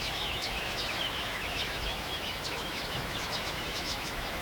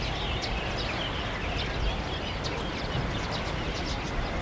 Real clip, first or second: second